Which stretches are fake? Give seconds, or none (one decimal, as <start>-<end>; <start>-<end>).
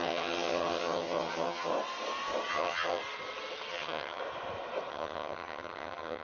0.0-1.7; 2.5-3.0; 3.7-4.2; 4.9-6.2